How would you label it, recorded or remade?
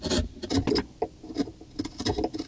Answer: recorded